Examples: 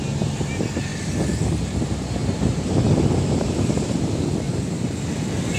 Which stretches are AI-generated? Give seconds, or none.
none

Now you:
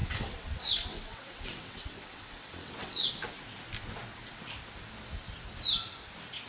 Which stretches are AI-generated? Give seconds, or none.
0.0-3.1 (vocoder, WaveNeXt)

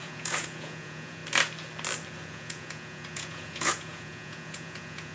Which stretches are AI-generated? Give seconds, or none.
0.0-1.2 (vocoder, Vocos); 2.3-5.1

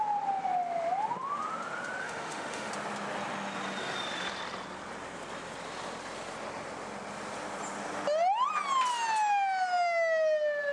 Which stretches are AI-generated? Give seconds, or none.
2.0-2.7 (autoencoder, DAC-VAE)

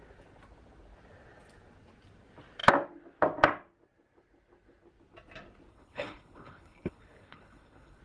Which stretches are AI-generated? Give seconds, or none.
5.7-8.0 (codec, HILCodec)

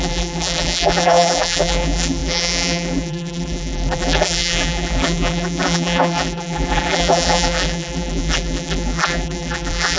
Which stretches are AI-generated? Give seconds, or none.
0.0-10.0 (vocoder, BigVGAN v2)

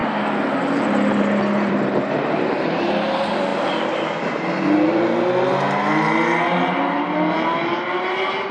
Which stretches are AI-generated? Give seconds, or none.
none

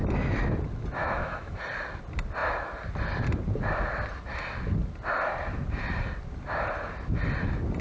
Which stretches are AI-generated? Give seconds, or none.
1.0-1.6 (autoencoder, DAC-VAE)